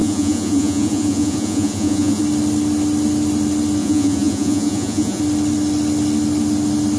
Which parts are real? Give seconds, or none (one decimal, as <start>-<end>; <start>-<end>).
2.2-3.8; 5.2-7.0